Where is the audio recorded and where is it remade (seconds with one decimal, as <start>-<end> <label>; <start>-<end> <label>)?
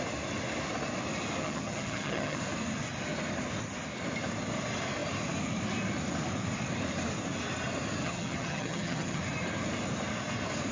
0.0-1.4 recorded; 1.4-2.4 remade; 2.4-8.0 recorded; 8.0-9.2 remade; 9.2-10.7 recorded